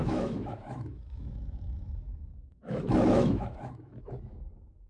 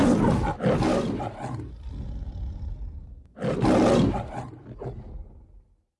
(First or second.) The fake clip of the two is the first